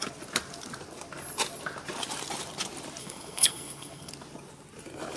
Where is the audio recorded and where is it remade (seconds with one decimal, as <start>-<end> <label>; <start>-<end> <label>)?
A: 0.0-3.0 recorded; 3.0-4.1 remade; 4.1-5.2 recorded